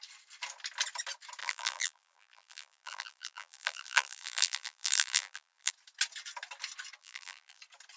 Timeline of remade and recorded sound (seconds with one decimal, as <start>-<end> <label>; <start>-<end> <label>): 0.0-1.4 recorded; 1.4-5.7 remade; 5.7-7.0 recorded; 7.0-7.6 remade; 7.6-8.0 recorded